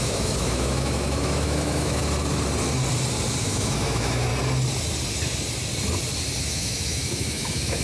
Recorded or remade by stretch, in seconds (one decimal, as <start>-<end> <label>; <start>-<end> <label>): 0.0-2.0 remade; 2.0-3.4 recorded; 3.4-4.3 remade; 4.3-6.4 recorded; 6.4-7.8 remade